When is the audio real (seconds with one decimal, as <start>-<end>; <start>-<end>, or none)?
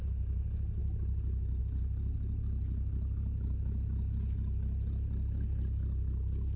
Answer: 0.0-6.6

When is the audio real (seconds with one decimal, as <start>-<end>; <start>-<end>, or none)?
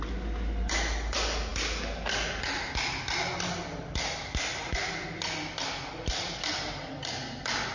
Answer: 0.0-7.7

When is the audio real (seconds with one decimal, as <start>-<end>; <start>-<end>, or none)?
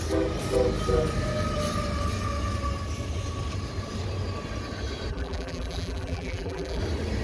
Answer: 0.0-5.1; 6.8-7.2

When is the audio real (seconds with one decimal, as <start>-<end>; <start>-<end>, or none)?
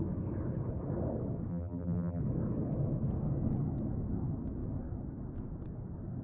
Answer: 0.0-1.5; 2.2-6.2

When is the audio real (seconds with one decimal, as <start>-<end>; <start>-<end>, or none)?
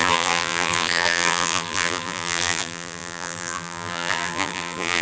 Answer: none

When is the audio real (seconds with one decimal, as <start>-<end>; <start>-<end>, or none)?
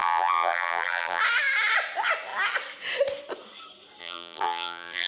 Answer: 1.2-4.0